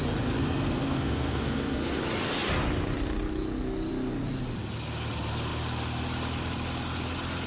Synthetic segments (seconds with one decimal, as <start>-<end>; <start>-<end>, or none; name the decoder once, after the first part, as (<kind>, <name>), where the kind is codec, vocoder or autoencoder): 0.4-2.0 (codec, SNAC)